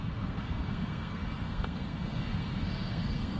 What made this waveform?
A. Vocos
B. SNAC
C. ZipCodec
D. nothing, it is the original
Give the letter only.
B